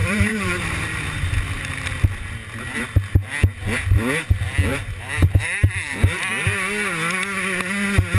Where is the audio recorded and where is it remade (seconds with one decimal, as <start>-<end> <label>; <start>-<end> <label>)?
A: 0.0-1.7 remade; 1.7-4.7 recorded; 4.7-6.2 remade; 6.2-8.2 recorded